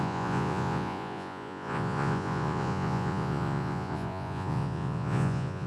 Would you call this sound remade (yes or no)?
yes